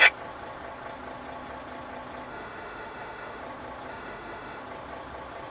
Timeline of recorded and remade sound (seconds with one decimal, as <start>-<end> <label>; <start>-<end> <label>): 0.0-2.3 recorded; 2.3-3.4 remade; 3.4-3.9 recorded; 3.9-4.6 remade; 4.6-5.5 recorded